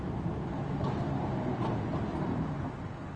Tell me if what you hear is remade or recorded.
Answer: recorded